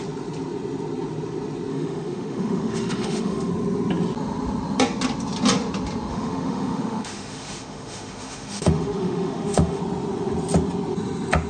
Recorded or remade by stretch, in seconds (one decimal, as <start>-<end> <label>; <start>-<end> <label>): 0.0-1.7 recorded; 1.7-3.5 remade; 3.5-6.1 recorded; 6.1-9.8 remade; 9.8-11.5 recorded